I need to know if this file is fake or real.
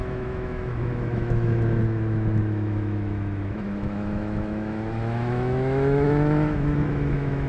fake